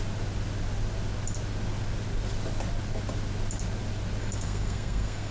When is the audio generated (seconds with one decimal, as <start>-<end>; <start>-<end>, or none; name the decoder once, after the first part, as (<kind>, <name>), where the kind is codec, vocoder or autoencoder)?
4.2-5.3 (codec, SNAC)